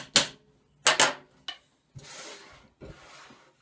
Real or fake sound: real